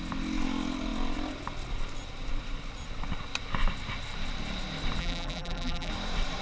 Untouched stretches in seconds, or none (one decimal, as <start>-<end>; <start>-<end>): 0.0-5.0; 5.9-6.4